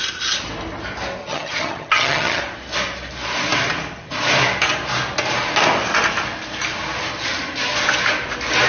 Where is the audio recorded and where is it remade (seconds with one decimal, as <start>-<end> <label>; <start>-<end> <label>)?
0.0-1.2 recorded; 1.2-2.4 remade; 2.4-8.7 recorded